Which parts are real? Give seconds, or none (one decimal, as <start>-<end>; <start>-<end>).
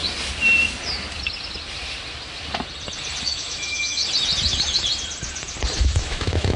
0.0-3.2; 4.0-5.8